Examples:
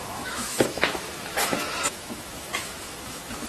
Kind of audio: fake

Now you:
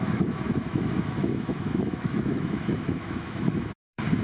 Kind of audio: fake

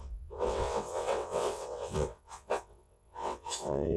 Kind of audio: fake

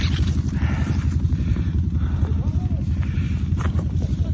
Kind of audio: real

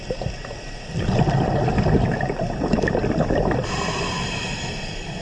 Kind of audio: real